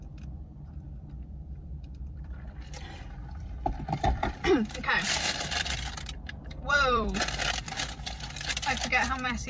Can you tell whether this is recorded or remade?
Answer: remade